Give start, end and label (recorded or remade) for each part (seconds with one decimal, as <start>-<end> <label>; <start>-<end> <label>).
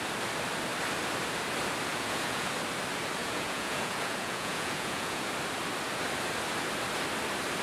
0.0-1.9 recorded; 1.9-2.5 remade; 2.5-3.2 recorded; 3.2-5.3 remade; 5.3-7.6 recorded